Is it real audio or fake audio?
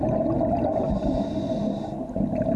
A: real